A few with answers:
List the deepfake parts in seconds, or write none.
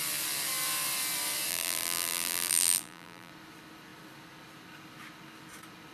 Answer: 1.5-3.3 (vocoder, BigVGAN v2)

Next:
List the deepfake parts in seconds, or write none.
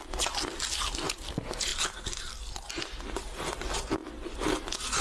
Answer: 1.7-2.7 (vocoder, BigVGAN v2)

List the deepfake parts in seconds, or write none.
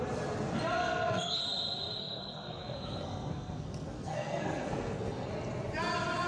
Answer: 0.8-1.4 (codec, SNAC); 2.0-5.3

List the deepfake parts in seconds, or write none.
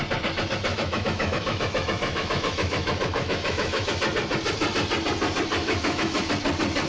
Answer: 0.7-3.9 (autoencoder, DAC-VAE); 5.6-6.3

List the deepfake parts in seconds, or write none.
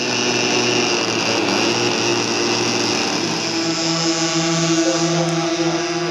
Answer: none